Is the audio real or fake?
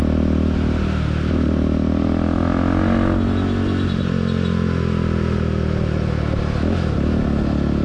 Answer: real